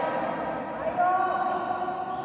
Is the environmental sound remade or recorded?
recorded